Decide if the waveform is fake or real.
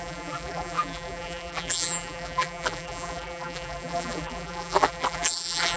fake